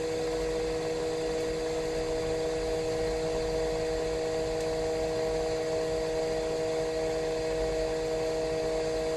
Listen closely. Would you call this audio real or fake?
real